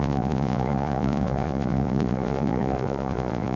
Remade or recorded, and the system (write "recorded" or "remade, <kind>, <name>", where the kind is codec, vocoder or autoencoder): remade, vocoder, Vocos